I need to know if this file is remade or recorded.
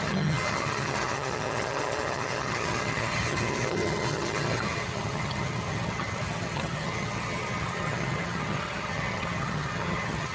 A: remade